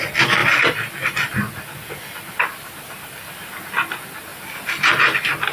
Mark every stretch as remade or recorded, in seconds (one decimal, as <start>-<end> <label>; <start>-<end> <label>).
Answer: 0.0-5.5 recorded